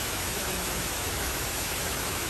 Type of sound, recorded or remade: remade